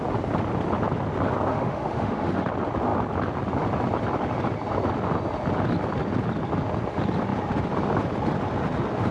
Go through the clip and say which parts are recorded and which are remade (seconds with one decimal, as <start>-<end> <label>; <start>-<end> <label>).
0.0-1.5 recorded; 1.5-2.3 remade; 2.3-9.1 recorded

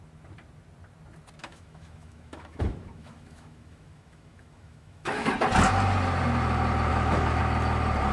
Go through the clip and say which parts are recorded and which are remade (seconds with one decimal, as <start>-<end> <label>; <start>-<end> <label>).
0.0-1.4 recorded; 1.4-5.3 remade; 5.3-6.9 recorded; 6.9-7.4 remade; 7.4-8.1 recorded